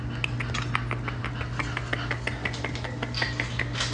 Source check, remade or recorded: recorded